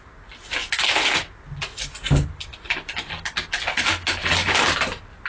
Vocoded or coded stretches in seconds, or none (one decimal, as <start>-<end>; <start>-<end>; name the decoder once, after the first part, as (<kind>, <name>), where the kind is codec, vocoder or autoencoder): 4.4-5.3 (vocoder, BigVGAN v2)

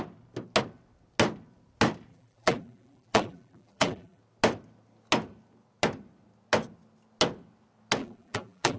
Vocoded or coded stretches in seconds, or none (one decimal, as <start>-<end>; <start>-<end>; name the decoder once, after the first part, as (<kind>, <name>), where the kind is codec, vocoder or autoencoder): 2.1-4.2 (vocoder, BigVGAN v2); 8.0-8.8

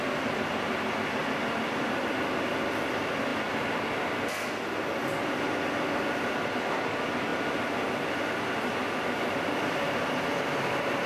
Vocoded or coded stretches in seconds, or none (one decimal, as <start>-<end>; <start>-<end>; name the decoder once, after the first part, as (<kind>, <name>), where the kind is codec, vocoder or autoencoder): 1.2-2.0 (vocoder, BigVGAN v2); 7.3-11.1

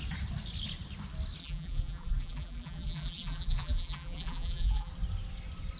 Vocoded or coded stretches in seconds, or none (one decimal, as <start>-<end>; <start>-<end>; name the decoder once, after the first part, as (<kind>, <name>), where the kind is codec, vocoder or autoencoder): 1.4-4.9 (vocoder, BigVGAN v2)

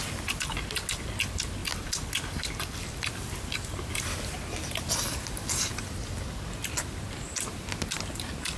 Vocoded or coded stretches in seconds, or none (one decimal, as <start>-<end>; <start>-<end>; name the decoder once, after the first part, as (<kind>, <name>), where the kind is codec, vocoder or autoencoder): none